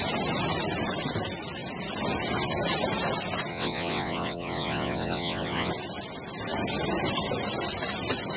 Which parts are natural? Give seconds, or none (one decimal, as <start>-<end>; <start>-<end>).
0.0-3.5; 5.7-8.4